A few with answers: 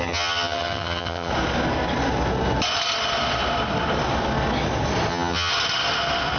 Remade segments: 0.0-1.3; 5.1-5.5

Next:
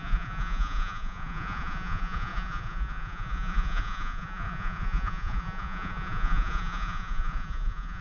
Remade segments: 0.0-8.0